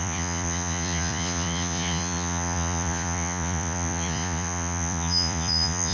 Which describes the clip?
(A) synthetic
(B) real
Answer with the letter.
A